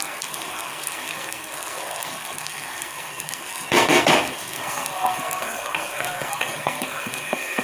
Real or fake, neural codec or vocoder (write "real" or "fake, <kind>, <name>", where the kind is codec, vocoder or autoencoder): fake, codec, SNAC